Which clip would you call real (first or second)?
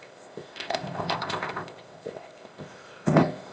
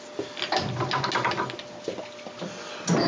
second